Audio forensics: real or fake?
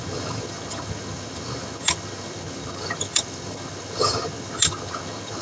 fake